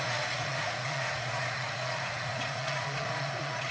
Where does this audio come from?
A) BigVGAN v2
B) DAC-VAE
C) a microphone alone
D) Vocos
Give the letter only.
D